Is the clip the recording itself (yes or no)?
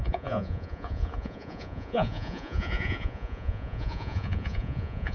no